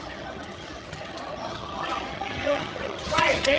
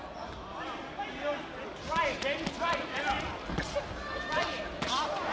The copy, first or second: first